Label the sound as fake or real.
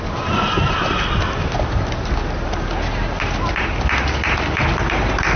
real